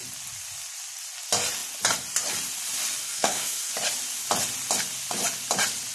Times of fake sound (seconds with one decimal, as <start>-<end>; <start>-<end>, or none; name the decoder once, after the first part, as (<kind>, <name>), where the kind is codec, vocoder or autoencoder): 3.0-3.7 (codec, SNAC)